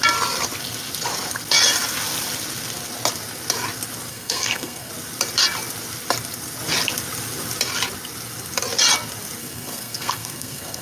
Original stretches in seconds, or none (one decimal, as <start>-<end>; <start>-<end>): 0.0-4.1; 4.9-9.4